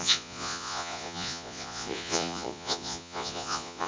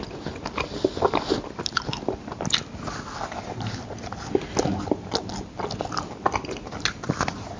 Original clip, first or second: second